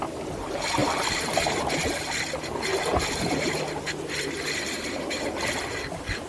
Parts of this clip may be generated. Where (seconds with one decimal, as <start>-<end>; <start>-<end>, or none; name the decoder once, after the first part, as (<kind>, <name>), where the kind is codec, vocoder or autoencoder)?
0.8-2.2 (vocoder, BigVGAN v2); 2.7-5.2